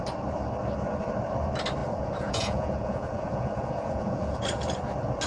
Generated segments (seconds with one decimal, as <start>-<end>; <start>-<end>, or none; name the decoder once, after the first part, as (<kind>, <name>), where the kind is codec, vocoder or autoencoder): 1.8-4.4 (vocoder, Vocos)